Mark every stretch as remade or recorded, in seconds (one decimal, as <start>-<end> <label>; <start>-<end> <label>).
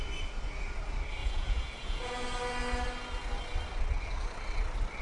0.0-1.2 recorded; 1.2-2.1 remade; 2.1-5.0 recorded